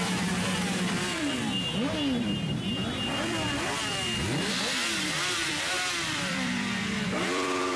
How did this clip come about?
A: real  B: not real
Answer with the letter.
B